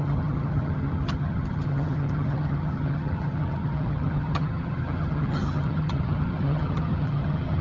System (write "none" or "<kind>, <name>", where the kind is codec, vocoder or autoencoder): vocoder, HiFi-GAN